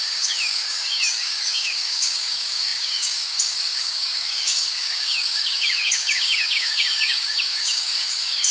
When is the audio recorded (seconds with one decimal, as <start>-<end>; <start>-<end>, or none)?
none